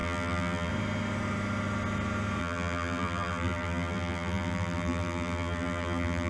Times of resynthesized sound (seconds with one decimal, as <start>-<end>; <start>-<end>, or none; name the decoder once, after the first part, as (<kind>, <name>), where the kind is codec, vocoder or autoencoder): 0.0-0.7 (vocoder, BigVGAN v2); 2.4-6.3